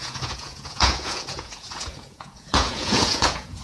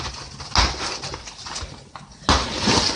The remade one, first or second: first